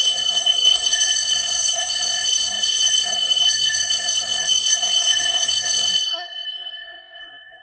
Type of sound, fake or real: fake